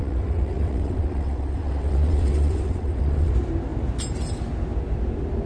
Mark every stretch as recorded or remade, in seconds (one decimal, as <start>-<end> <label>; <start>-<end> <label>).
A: 0.0-3.3 remade; 3.3-5.5 recorded